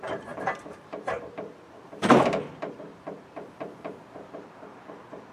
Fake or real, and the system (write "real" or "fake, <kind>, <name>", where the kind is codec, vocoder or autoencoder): fake, vocoder, BigVGAN v2